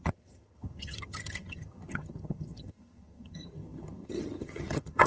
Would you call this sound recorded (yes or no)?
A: no